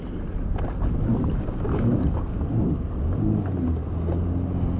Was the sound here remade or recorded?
recorded